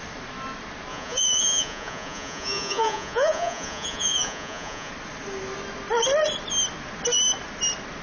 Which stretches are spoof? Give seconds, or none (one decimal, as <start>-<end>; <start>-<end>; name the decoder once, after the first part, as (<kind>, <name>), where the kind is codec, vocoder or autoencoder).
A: 0.9-4.9 (vocoder, Vocos)